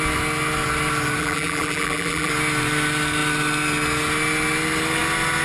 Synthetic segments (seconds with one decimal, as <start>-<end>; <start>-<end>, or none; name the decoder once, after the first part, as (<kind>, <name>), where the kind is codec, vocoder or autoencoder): 1.2-2.3 (vocoder, BigVGAN v2)